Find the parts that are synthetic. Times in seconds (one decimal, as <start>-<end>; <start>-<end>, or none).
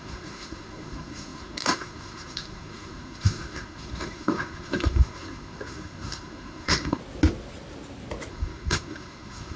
0.0-7.0; 8.3-9.6